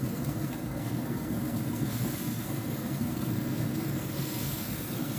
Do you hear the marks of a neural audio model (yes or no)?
yes